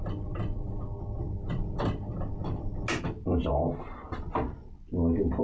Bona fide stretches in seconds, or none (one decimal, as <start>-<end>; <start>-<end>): 0.0-5.4